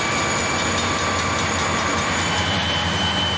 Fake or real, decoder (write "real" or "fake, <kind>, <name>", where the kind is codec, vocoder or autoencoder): real